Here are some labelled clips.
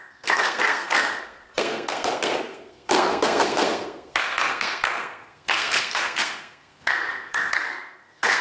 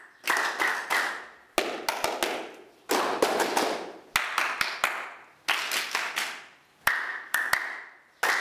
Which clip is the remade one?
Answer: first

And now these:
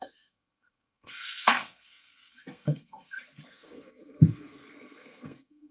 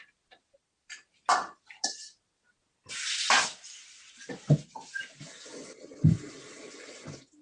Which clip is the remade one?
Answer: first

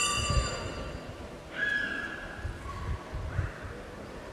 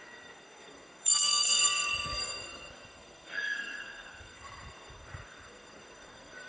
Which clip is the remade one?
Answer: second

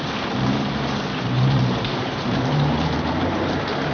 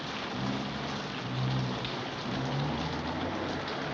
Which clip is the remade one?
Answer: first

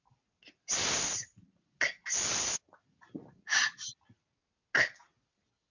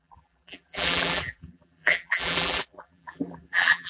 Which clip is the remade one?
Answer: second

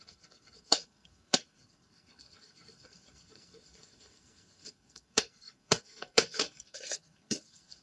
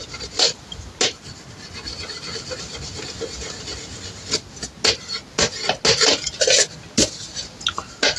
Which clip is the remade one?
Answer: first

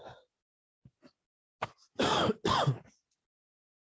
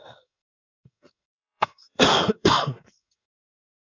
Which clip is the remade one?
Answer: second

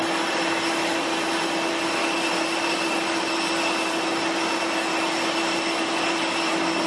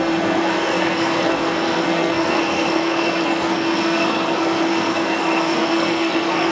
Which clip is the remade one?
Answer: second